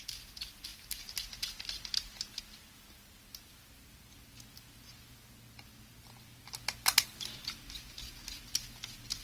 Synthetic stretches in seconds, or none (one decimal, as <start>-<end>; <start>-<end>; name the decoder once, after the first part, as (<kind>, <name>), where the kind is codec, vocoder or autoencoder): none